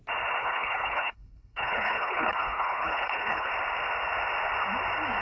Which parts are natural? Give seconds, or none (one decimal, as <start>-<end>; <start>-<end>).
0.0-0.4; 3.5-5.2